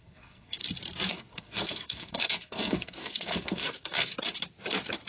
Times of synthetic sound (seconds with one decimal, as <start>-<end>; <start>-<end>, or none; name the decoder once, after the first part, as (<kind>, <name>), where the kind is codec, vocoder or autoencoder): 0.0-0.6 (codec, SNAC); 1.1-4.1